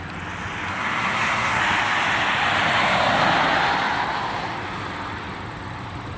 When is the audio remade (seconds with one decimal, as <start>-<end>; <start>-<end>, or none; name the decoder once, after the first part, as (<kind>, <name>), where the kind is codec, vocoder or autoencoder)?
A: 0.7-1.6 (codec, SNAC)